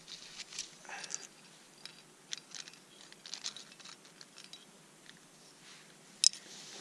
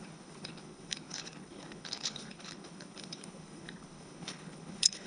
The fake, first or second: second